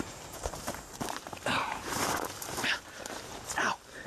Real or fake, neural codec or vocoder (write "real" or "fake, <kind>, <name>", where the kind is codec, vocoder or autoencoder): fake, vocoder, BigVGAN v2